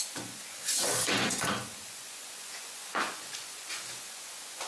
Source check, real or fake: fake